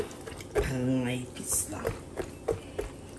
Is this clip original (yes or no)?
yes